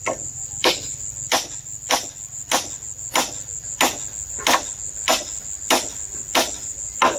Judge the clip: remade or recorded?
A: recorded